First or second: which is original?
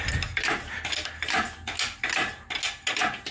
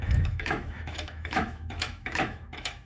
first